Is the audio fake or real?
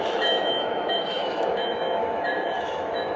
fake